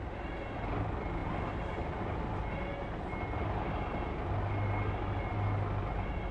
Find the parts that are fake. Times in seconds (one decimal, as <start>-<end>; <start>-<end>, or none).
none